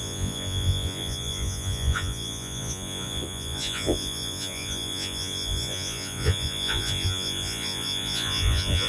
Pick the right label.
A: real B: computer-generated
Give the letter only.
B